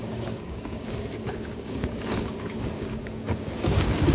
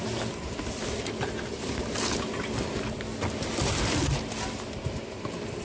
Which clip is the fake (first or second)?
first